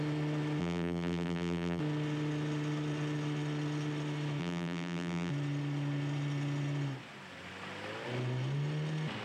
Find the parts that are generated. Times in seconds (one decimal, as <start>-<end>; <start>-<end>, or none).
0.6-1.8; 4.4-5.3